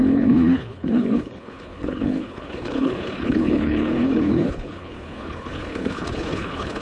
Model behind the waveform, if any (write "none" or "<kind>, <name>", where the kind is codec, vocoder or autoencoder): codec, HILCodec